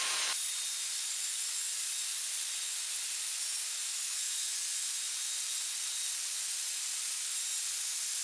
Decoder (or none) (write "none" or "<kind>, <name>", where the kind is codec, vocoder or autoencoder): none